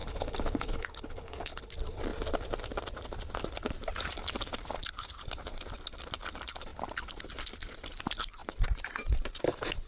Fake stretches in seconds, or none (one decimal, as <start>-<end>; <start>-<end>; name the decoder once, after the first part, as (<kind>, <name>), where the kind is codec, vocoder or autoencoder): 0.0-1.6 (codec, HILCodec)